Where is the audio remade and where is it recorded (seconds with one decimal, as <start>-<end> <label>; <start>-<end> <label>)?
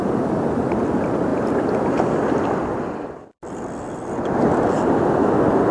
0.0-5.7 recorded